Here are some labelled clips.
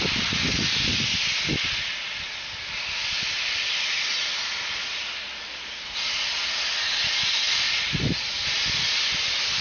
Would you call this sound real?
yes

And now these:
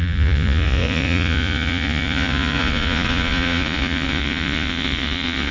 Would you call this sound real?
no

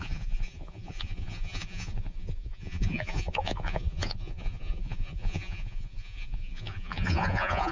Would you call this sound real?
no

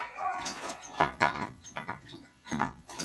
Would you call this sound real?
no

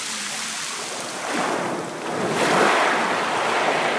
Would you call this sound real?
yes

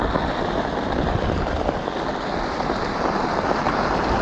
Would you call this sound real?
yes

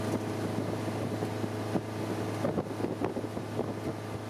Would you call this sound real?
yes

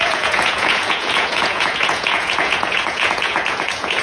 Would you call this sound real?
no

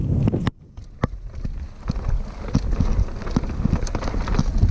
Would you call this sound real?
yes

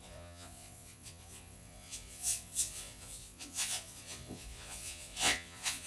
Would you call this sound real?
no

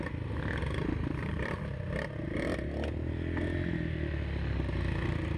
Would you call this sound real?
yes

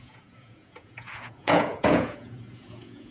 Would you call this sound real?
no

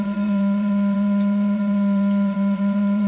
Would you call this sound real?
no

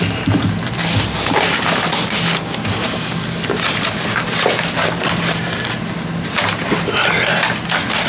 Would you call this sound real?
yes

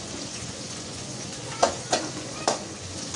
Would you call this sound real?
no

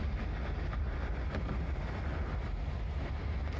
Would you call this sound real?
yes